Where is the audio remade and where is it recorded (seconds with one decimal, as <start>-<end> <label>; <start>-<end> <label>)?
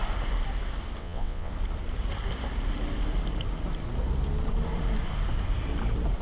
0.0-1.0 recorded; 1.0-1.5 remade; 1.5-6.2 recorded